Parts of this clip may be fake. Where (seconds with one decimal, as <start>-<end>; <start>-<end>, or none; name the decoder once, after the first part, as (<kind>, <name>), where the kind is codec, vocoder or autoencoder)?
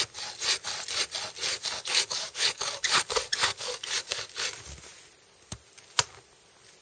1.5-4.2 (codec, DAC)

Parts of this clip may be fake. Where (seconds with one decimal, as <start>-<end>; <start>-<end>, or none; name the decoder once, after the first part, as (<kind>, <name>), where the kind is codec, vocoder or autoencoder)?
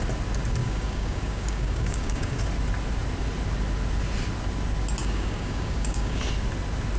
0.6-2.4 (codec, DAC); 5.0-6.2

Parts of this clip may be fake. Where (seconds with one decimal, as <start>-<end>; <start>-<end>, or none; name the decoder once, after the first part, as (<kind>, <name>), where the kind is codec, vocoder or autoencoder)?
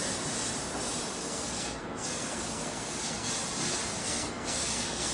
1.2-3.3 (codec, SNAC); 4.0-5.1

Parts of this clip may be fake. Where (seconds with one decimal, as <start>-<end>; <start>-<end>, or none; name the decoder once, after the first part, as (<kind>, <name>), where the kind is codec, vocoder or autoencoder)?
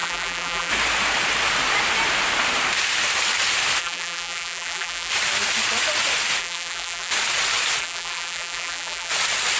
0.0-0.7 (vocoder, BigVGAN v2); 3.8-5.1; 6.4-7.1; 7.8-9.1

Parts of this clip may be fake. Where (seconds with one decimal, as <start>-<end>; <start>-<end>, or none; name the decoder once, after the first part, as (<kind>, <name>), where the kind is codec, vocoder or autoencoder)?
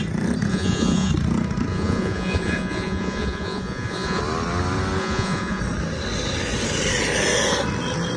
0.5-1.1 (vocoder, Vocos); 1.7-4.2; 5.0-5.6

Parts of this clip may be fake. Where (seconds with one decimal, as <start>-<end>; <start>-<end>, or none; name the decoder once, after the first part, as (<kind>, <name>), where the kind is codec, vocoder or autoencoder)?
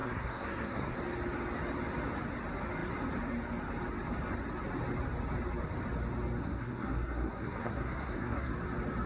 0.0-1.0 (codec, SNAC); 6.4-8.5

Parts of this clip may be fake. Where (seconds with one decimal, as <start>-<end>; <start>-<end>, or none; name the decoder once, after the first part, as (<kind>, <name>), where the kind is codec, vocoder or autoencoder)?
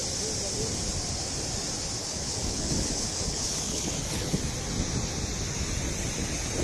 2.0-4.4 (codec, HILCodec)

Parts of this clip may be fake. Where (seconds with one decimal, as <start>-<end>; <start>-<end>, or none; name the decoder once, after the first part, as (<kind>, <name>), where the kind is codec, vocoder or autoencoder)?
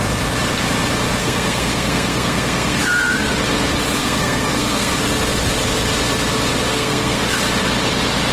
1.2-2.8 (codec, SNAC); 4.0-4.9; 6.7-7.2